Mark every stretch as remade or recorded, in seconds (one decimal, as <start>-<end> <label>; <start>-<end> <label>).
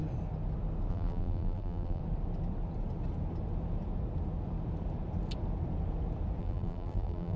0.0-0.9 recorded; 0.9-2.0 remade; 2.0-6.4 recorded; 6.4-7.4 remade